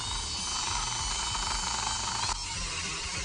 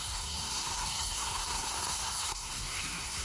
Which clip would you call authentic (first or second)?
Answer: first